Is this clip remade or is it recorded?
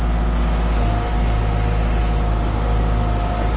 recorded